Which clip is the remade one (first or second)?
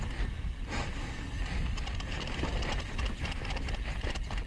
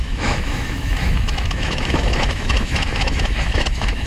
second